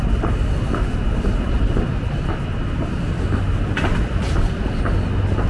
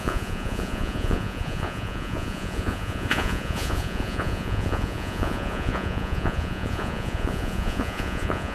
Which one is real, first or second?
first